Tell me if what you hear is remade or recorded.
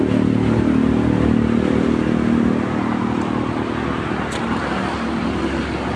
recorded